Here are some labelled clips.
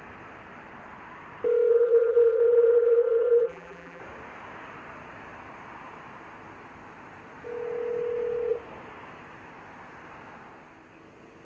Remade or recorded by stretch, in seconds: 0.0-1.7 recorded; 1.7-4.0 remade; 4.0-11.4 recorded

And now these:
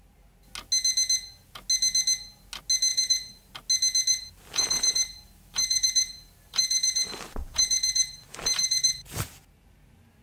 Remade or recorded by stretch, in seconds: 0.0-2.9 recorded; 2.9-3.5 remade; 3.5-4.1 recorded; 4.1-9.3 remade; 9.3-10.2 recorded

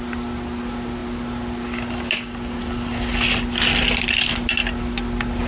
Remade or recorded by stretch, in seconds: 0.0-5.5 recorded

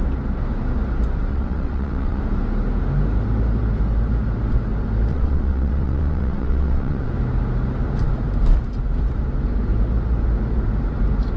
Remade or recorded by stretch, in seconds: 0.0-1.3 recorded; 1.3-2.2 remade; 2.2-5.1 recorded; 5.1-7.1 remade; 7.1-11.4 recorded

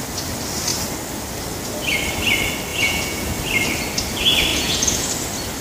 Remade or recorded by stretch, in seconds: 0.0-2.7 recorded; 2.7-3.3 remade; 3.3-4.5 recorded; 4.5-5.1 remade; 5.1-5.6 recorded

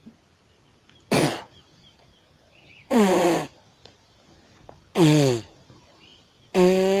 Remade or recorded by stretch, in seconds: 0.0-7.0 recorded